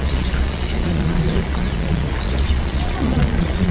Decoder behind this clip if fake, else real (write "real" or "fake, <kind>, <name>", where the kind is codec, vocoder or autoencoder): fake, vocoder, Vocos